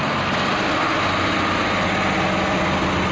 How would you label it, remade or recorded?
recorded